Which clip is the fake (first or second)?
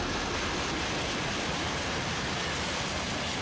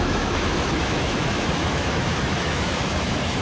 second